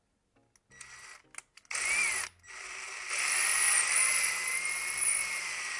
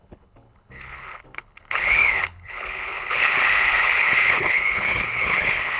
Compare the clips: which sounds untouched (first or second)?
first